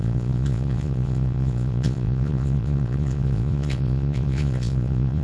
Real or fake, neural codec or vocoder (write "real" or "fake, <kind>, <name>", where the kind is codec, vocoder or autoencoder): fake, vocoder, Vocos